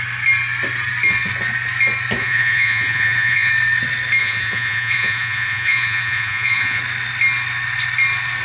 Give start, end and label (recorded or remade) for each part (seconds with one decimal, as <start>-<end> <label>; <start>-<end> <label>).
0.0-2.2 recorded; 2.2-3.5 remade; 3.5-4.2 recorded; 4.2-6.8 remade; 6.8-8.4 recorded